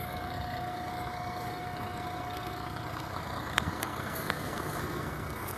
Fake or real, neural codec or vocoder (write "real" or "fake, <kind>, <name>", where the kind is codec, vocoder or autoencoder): fake, codec, SNAC